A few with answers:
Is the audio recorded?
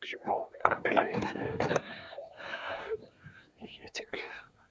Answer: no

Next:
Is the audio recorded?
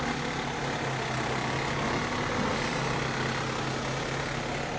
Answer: yes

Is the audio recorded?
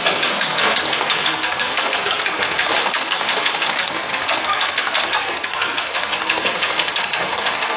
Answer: no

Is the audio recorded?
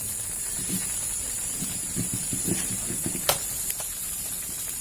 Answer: no